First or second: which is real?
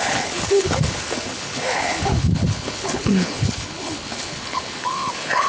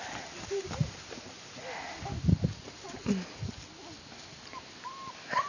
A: second